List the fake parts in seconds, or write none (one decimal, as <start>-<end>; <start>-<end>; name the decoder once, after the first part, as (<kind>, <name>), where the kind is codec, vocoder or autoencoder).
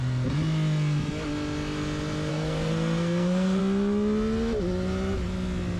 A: 2.3-3.6 (codec, SNAC)